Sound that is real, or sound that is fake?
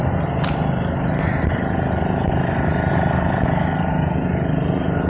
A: real